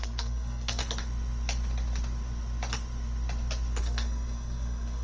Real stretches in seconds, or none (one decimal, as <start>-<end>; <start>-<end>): 0.8-3.8